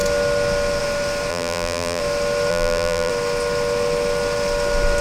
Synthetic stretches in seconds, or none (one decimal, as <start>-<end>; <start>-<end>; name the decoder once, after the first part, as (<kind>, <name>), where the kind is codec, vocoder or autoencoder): 1.3-2.0 (vocoder, BigVGAN v2); 2.5-3.1